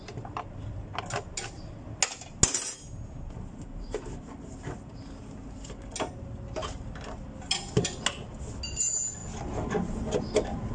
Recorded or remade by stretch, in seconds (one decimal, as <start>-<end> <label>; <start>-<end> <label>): 0.0-10.7 recorded